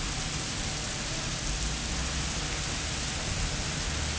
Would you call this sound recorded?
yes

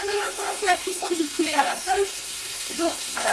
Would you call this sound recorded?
no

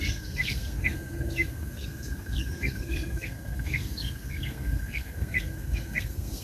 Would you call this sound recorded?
no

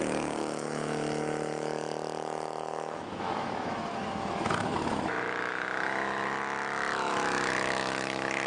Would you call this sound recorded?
no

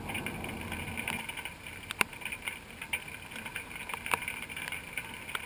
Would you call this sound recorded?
yes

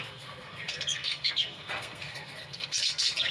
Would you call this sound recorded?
no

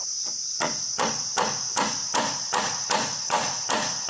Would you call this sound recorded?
no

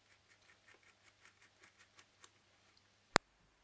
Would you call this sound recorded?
yes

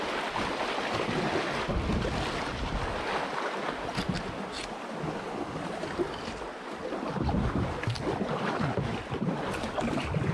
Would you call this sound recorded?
yes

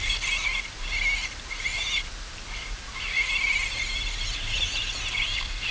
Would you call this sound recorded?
yes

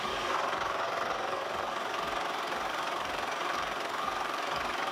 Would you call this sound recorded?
no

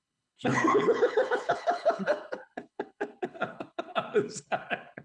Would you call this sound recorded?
no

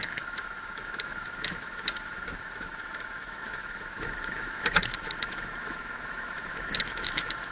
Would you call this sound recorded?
no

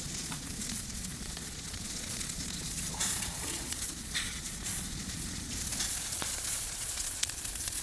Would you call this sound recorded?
no